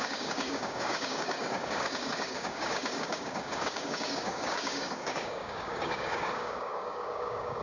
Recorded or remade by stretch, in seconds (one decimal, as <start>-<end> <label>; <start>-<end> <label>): 0.0-7.6 remade